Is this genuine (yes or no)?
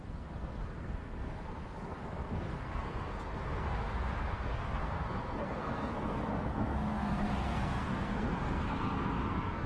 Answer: no